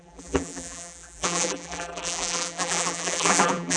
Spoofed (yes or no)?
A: yes